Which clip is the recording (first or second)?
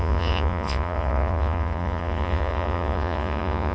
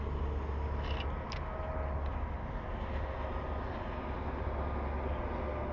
second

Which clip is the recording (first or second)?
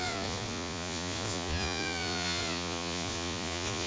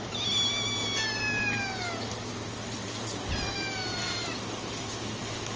second